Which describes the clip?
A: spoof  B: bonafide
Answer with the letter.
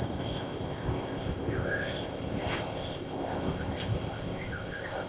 A